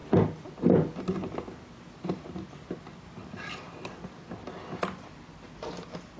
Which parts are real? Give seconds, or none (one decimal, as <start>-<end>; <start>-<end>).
0.0-1.8